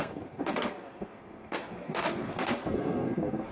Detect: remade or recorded remade